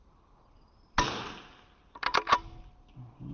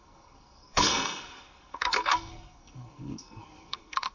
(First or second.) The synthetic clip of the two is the second